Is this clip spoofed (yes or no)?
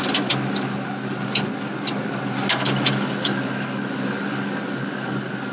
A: no